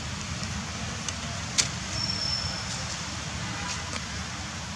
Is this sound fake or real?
real